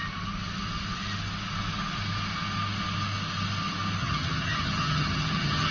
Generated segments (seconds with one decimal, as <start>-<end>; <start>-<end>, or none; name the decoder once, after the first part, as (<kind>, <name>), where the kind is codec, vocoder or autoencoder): 4.0-5.7 (vocoder, HiFi-GAN)